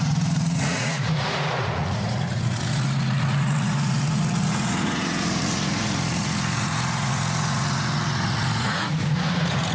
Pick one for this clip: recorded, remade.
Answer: remade